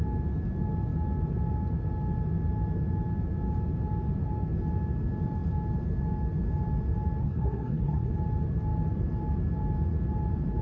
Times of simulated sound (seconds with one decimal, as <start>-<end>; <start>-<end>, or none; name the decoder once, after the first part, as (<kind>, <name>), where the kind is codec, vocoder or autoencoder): 7.2-8.1 (codec, SNAC)